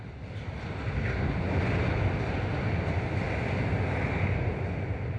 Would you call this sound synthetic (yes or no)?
no